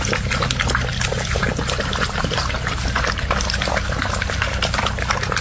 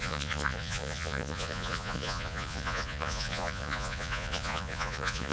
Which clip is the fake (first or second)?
second